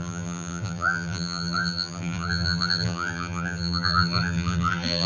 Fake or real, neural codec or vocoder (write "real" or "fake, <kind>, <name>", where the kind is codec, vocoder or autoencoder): fake, vocoder, BigVGAN v2